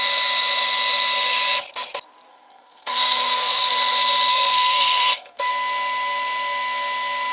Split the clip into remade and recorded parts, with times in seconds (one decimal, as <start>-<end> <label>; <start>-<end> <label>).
0.0-2.3 recorded; 2.3-3.7 remade; 3.7-4.3 recorded; 4.3-5.5 remade; 5.5-7.3 recorded